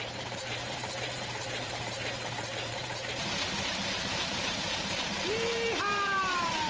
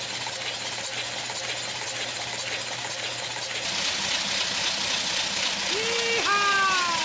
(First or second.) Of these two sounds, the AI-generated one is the first